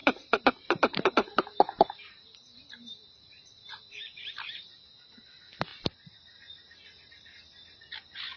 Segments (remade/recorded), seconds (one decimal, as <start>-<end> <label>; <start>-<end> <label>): 0.0-4.3 remade; 4.3-8.4 recorded